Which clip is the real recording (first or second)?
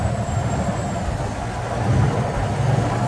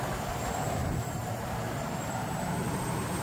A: first